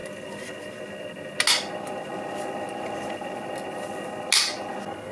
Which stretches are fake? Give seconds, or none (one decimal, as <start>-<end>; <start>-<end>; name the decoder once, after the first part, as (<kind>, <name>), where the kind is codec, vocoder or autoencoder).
none